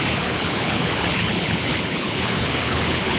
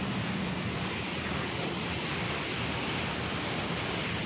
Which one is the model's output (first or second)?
first